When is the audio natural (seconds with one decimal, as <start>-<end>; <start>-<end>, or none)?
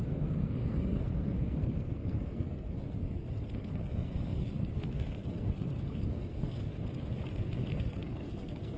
6.7-7.3